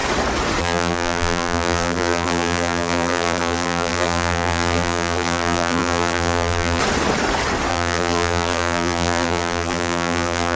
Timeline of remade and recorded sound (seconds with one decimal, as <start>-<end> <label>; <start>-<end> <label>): 0.0-0.6 recorded; 0.6-6.8 remade; 6.8-7.7 recorded; 7.7-10.6 remade